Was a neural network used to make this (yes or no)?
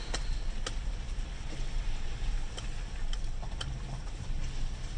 no